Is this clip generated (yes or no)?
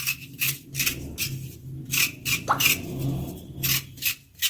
no